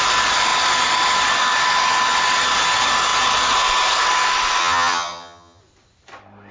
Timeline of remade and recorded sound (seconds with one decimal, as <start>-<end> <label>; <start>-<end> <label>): 0.0-4.6 recorded; 4.6-5.6 remade; 5.6-6.5 recorded